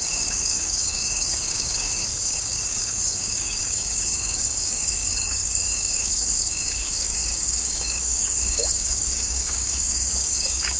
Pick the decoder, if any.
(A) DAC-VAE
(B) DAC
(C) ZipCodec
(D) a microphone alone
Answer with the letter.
B